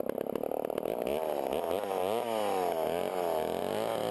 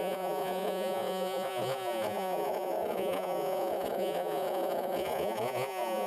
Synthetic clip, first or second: second